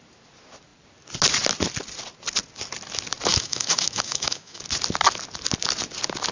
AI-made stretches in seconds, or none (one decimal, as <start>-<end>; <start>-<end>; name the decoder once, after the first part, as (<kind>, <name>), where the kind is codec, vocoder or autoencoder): 3.3-4.6 (autoencoder, DAC-VAE)